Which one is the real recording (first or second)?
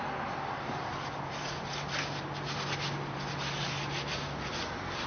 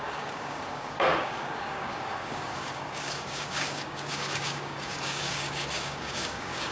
first